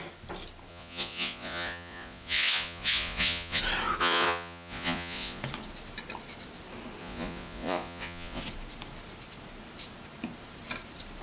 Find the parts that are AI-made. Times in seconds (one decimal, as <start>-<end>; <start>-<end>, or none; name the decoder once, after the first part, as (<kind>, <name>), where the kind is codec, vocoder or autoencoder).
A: 0.7-3.6 (vocoder, Vocos); 4.0-5.4; 7.0-8.4

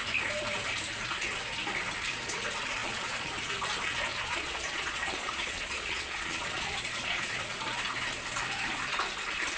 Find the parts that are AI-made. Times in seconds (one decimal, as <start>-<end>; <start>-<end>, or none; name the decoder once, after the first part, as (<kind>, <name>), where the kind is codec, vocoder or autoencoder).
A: 2.8-3.3 (vocoder, Vocos); 4.1-7.3

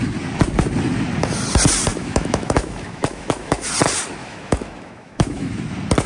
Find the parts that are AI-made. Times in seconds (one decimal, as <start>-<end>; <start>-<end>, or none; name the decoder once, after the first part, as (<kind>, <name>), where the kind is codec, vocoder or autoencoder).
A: 1.9-3.7 (autoencoder, DAC-VAE); 4.2-5.5

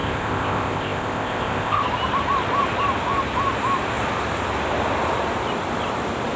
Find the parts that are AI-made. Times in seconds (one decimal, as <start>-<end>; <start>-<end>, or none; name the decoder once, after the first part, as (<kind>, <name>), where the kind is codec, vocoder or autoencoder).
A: 0.0-1.8 (codec, ZipCodec)

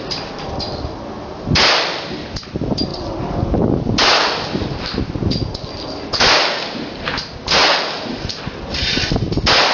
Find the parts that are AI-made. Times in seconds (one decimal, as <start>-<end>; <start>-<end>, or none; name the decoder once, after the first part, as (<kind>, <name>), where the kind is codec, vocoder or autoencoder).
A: none

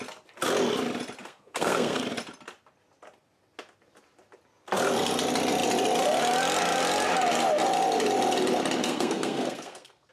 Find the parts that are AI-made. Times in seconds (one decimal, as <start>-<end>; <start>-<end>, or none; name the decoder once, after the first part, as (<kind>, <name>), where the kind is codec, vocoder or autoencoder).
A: 1.2-2.0 (codec, SNAC); 8.8-10.1

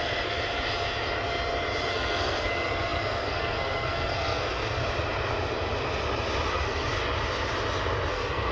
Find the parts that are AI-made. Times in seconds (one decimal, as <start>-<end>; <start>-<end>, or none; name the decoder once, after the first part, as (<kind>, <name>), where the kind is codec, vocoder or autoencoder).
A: 0.0-0.4 (codec, SNAC); 1.9-4.8; 6.5-6.9; 8.1-8.5